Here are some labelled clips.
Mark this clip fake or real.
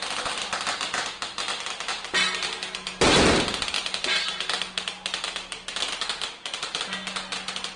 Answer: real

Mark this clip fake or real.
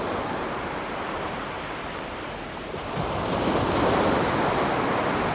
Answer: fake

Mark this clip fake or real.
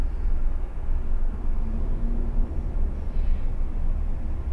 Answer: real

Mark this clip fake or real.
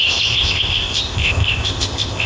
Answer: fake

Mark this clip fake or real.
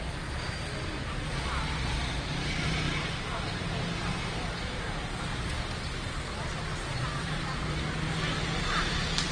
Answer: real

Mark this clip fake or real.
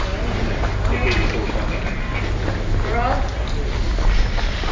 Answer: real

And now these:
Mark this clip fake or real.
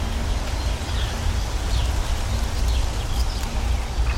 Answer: real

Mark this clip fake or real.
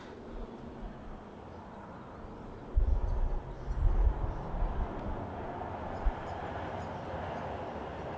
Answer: real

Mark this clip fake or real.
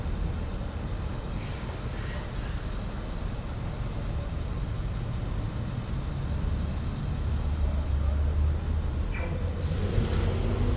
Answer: real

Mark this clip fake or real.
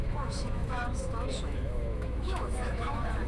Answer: fake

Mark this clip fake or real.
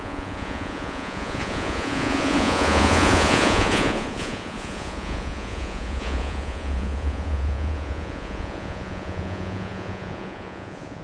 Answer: fake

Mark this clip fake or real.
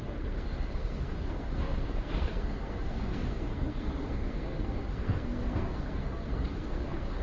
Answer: fake